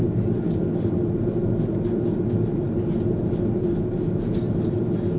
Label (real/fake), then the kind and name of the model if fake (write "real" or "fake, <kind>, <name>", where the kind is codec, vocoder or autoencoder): real